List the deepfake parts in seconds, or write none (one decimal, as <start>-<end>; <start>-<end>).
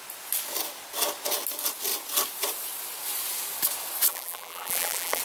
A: 4.1-5.2